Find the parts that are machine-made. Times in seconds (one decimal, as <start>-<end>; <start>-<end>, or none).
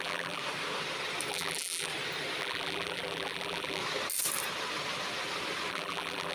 0.0-0.4; 1.3-1.9; 2.4-3.8; 5.7-6.3